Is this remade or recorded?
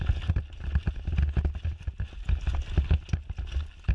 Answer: recorded